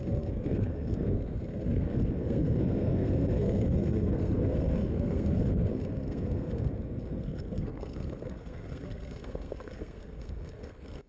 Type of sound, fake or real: fake